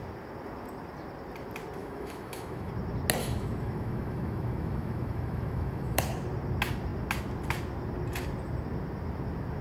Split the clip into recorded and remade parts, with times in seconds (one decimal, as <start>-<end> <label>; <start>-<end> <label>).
0.0-1.8 recorded; 1.8-2.7 remade; 2.7-3.2 recorded; 3.2-6.0 remade; 6.0-9.6 recorded